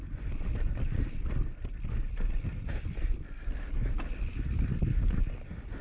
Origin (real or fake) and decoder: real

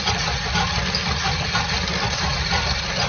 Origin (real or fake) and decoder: real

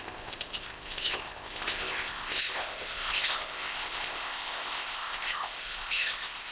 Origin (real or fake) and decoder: fake, codec, ZipCodec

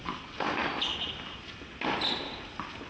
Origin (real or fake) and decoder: real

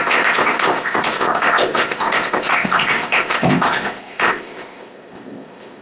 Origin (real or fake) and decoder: fake, codec, ZipCodec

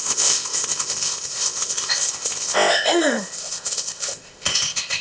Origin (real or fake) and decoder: fake, codec, ZipCodec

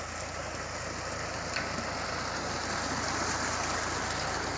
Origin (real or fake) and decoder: real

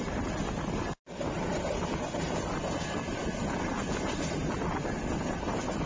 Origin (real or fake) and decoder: real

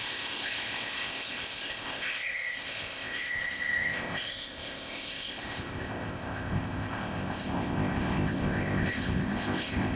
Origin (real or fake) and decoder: fake, codec, ZipCodec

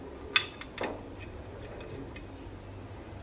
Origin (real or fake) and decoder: real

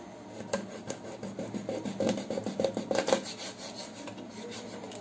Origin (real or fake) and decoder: real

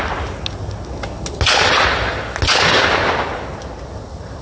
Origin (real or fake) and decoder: real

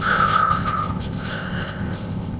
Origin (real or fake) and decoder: fake, codec, ZipCodec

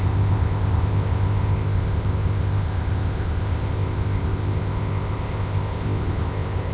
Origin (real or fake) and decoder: fake, codec, ZipCodec